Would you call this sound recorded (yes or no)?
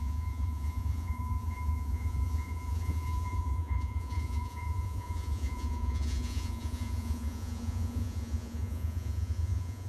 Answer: no